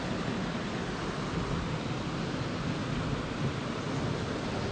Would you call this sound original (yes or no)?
yes